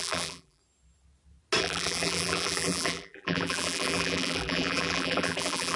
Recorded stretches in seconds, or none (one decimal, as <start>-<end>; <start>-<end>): 0.6-1.6